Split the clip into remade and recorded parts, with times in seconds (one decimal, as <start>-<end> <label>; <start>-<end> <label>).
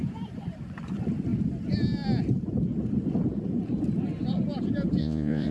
0.0-5.0 recorded; 5.0-5.5 remade